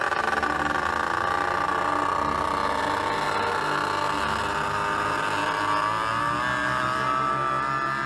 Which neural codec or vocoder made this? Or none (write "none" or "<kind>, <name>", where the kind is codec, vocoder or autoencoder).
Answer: none